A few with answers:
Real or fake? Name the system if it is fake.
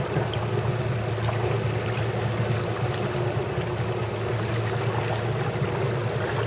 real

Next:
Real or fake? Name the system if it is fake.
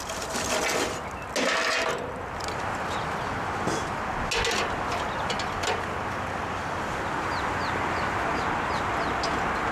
real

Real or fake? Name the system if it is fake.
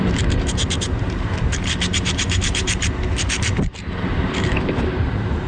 fake, vocoder, BigVGAN v2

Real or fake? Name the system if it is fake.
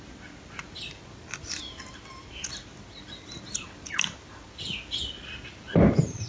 real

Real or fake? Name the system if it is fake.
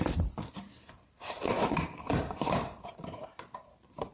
fake, vocoder, BigVGAN v2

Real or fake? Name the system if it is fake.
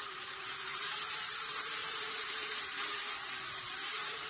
fake, vocoder, BigVGAN v2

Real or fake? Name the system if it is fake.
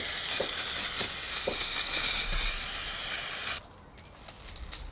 real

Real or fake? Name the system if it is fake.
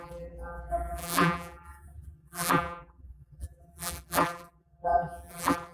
fake, vocoder, BigVGAN v2